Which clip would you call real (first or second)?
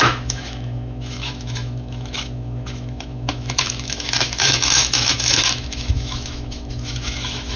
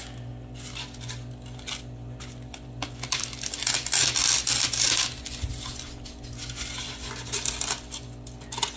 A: second